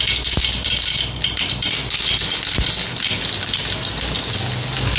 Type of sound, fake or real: real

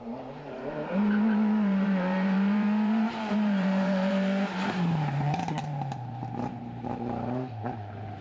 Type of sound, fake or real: fake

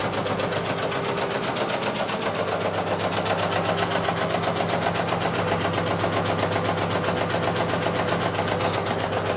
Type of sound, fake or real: real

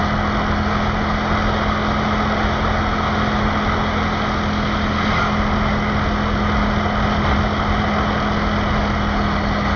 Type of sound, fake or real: real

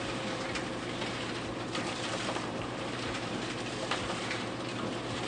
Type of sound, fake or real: fake